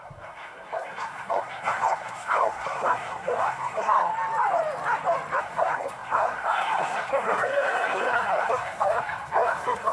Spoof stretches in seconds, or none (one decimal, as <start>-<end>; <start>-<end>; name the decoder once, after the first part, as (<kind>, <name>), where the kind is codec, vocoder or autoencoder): 0.0-4.1 (codec, SNAC); 5.4-9.9